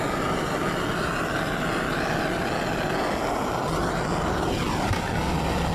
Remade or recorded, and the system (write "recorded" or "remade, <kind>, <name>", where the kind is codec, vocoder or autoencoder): recorded